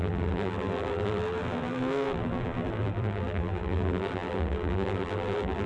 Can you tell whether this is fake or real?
fake